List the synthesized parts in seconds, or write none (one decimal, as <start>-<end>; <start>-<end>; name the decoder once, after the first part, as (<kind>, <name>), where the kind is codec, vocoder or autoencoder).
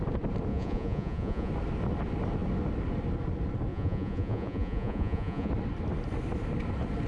0.5-1.5 (vocoder, Vocos); 3.7-5.5